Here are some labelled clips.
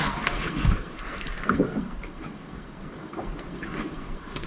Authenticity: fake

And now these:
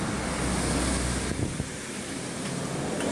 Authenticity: real